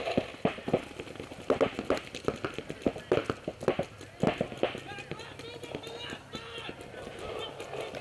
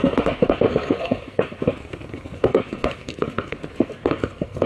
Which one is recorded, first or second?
first